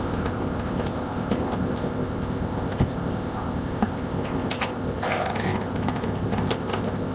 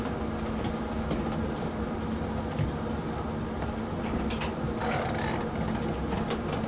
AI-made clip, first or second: first